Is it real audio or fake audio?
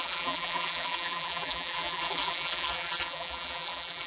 fake